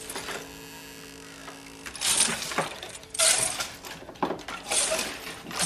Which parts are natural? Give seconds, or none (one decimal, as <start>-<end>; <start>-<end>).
0.0-5.7